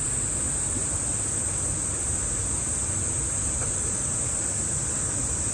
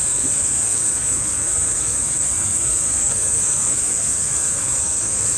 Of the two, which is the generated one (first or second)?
second